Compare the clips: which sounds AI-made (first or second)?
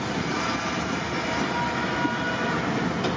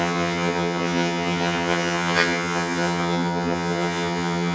second